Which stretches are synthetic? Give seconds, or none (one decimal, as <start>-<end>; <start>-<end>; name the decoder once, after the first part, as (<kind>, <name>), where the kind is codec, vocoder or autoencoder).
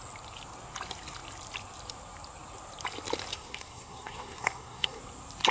3.3-5.0 (codec, SNAC)